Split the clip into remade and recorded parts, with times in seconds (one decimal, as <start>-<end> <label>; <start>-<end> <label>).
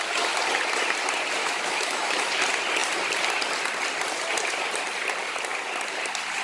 0.0-1.4 recorded; 1.4-2.3 remade; 2.3-6.4 recorded